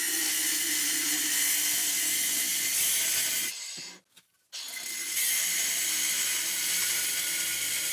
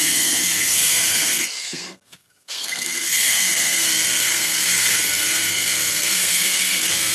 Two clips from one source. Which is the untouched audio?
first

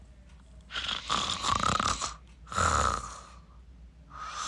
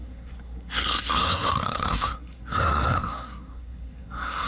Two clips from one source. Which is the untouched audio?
first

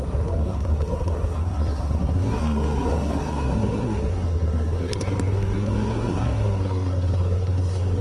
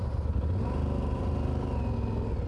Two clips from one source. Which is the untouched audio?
second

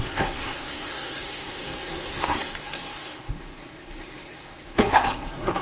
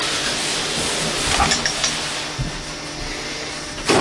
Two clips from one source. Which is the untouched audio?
second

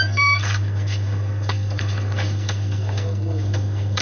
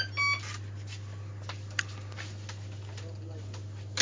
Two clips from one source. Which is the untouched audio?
second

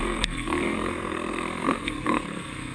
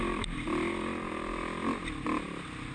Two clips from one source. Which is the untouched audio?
second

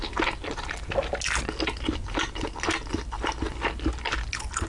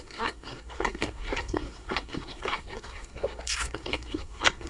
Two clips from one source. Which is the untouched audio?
first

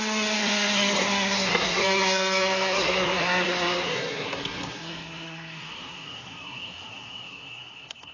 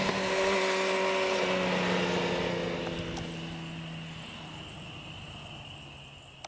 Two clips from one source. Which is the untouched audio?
second